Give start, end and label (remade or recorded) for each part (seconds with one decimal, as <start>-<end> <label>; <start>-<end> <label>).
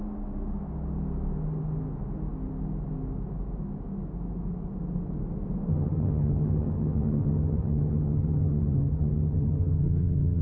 0.0-5.7 recorded; 5.7-10.4 remade